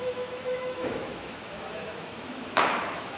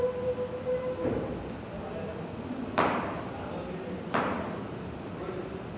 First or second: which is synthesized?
first